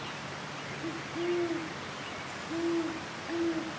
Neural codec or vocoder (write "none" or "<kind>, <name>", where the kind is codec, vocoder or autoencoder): none